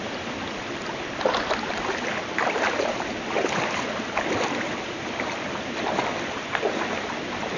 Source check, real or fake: real